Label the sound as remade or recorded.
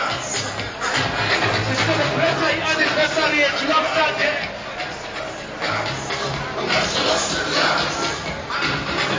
recorded